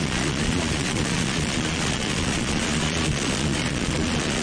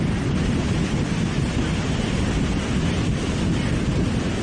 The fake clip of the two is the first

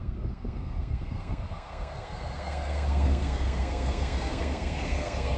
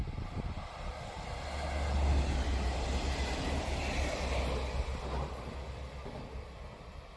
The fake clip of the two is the first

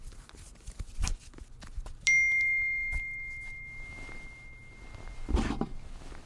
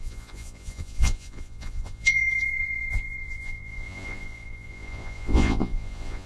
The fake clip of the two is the second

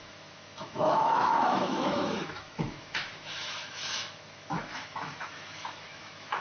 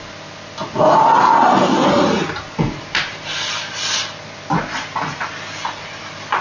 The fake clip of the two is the first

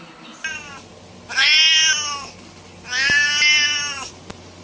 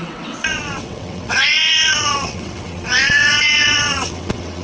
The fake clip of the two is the second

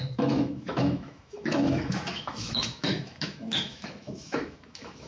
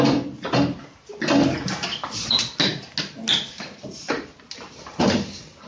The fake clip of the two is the first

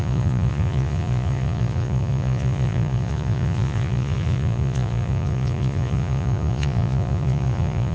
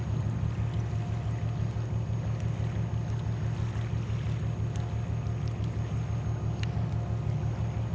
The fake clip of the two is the first